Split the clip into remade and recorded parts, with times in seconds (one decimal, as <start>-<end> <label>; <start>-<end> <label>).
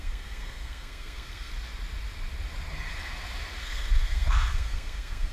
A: 0.0-1.5 remade; 1.5-3.6 recorded; 3.6-5.3 remade